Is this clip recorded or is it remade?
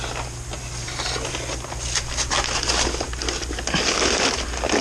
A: recorded